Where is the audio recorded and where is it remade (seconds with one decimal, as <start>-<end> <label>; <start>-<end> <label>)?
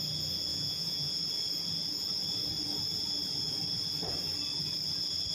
0.0-0.5 recorded; 0.5-1.1 remade; 1.1-5.3 recorded